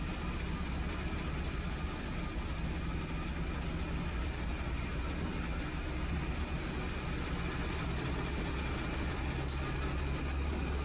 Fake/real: real